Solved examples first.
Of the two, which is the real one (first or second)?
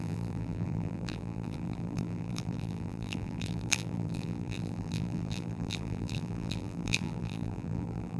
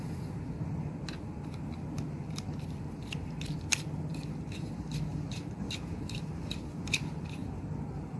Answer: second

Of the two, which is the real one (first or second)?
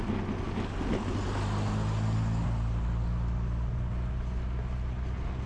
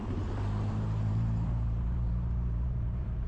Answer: first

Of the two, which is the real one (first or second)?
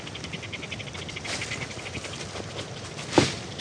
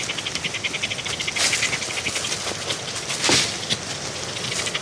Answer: second